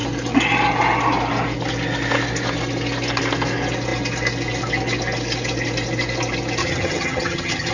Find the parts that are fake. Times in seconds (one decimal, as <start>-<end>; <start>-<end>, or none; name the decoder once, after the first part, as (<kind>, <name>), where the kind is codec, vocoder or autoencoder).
6.6-7.7 (vocoder, HiFi-GAN)